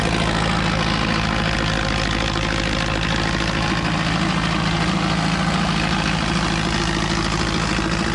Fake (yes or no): no